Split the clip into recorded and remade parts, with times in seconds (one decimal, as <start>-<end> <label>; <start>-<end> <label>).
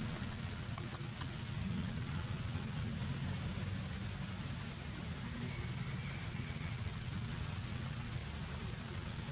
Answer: 0.0-2.9 remade; 2.9-6.3 recorded; 6.3-8.2 remade; 8.2-8.8 recorded; 8.8-9.3 remade